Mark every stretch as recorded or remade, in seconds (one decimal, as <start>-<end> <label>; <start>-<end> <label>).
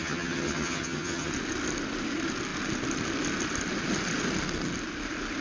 0.0-1.3 remade; 1.3-5.4 recorded